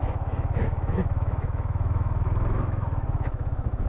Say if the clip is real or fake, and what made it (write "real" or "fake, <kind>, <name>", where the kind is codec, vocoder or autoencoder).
fake, autoencoder, DAC-VAE